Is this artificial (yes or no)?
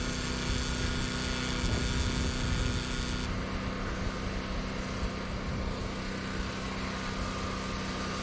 no